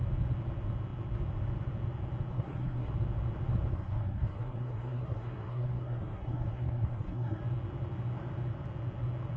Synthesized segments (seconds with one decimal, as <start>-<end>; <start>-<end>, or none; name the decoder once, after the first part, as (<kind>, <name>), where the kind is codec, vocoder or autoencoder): 2.3-2.9 (codec, SNAC); 3.7-7.4